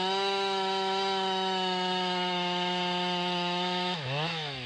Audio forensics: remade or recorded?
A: remade